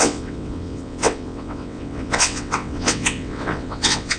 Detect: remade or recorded remade